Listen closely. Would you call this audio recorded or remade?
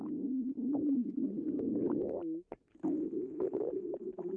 recorded